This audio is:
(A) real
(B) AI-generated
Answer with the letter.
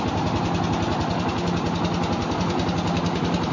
A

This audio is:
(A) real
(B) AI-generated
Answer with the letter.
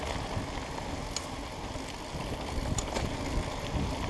A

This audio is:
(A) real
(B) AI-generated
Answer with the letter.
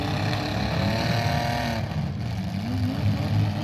A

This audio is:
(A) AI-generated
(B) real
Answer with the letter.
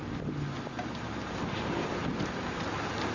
B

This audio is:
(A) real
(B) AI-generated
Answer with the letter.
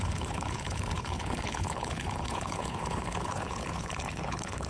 B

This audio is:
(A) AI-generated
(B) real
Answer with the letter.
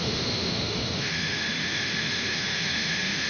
A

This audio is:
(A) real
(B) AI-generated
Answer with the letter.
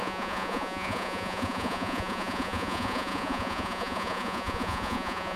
B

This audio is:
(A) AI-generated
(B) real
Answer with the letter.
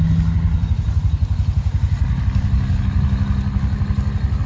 B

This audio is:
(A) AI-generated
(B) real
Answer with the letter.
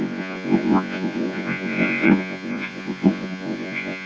A